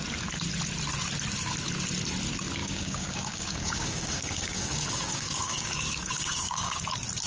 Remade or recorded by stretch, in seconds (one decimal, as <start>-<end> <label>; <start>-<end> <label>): 0.0-2.6 recorded; 2.6-6.8 remade; 6.8-7.3 recorded